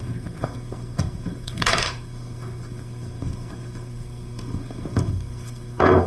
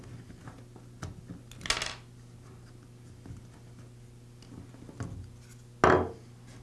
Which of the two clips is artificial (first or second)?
first